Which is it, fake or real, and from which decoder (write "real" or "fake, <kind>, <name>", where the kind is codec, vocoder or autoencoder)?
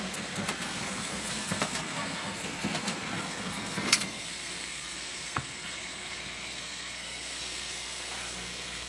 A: fake, codec, SNAC